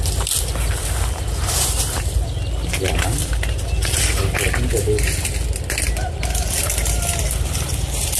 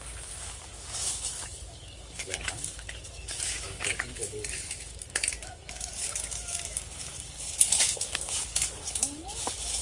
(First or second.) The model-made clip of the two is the second